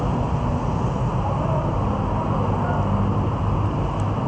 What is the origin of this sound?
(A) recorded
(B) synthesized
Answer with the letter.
A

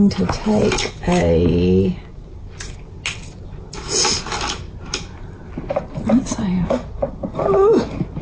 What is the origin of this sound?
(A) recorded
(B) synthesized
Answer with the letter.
A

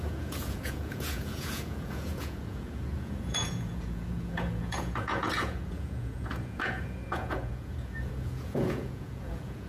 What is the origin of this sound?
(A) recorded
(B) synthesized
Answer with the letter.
B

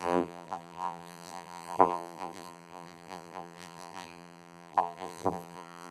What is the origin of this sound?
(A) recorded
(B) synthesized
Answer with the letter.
B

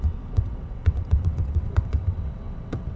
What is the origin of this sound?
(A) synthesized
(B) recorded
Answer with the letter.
A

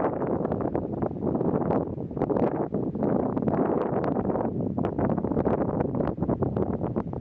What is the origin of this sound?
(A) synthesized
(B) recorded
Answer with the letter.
B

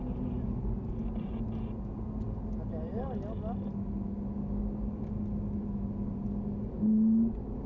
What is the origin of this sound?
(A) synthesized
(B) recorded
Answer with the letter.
B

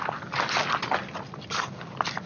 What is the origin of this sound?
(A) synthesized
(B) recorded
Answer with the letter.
B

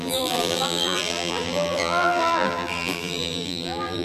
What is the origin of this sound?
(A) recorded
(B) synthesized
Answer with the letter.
B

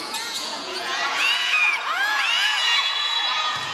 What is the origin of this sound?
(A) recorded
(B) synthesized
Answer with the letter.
B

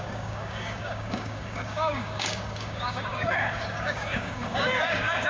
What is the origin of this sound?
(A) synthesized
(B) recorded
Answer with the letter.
A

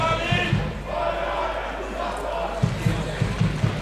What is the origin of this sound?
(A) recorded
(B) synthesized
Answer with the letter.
A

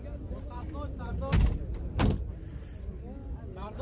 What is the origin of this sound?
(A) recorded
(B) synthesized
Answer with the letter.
A